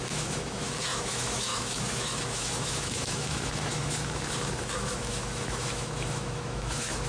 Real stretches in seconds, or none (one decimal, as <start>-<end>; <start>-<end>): none